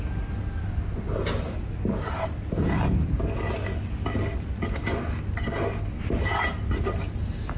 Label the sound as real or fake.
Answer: real